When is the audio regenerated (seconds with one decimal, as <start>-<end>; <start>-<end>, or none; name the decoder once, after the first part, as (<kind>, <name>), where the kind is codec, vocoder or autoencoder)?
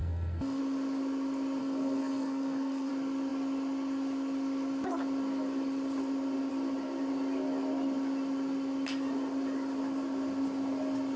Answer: 0.0-0.6 (codec, SNAC); 1.6-2.9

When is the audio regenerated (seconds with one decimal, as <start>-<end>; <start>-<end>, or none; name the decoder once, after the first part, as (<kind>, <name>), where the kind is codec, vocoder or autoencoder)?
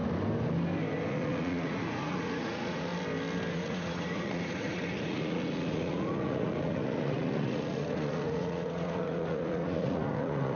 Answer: 1.1-2.9 (vocoder, Vocos); 3.5-10.6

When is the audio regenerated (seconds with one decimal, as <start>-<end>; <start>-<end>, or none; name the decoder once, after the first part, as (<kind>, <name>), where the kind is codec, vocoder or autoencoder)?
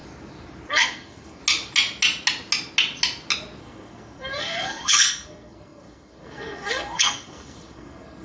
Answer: 0.7-1.4 (codec, SNAC); 3.6-8.2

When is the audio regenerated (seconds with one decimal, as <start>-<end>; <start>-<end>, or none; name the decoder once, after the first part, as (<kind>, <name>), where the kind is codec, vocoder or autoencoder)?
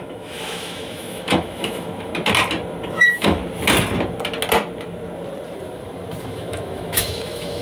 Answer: 0.0-2.1 (autoencoder, DAC-VAE); 2.9-3.4; 6.2-7.6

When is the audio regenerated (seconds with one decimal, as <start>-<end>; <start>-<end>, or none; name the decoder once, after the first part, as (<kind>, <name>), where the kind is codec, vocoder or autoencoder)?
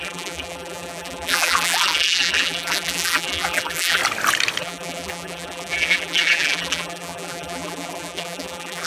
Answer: 0.0-4.0 (vocoder, BigVGAN v2); 4.6-8.9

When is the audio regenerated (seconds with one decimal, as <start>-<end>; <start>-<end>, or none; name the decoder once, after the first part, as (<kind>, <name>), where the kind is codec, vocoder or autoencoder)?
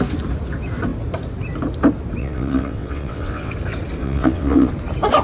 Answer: 2.2-3.5 (vocoder, WaveNeXt); 4.0-4.7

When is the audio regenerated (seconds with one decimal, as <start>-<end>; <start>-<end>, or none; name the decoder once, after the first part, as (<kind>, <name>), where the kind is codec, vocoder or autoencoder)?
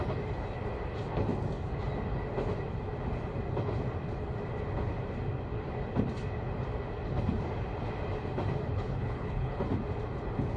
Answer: 8.7-9.6 (codec, HILCodec)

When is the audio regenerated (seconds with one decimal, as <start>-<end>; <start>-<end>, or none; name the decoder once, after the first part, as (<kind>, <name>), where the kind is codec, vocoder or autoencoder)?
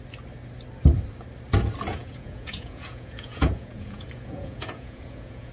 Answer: 1.9-5.5 (vocoder, Vocos)